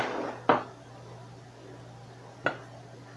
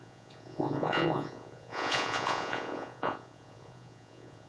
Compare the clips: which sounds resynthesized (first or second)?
second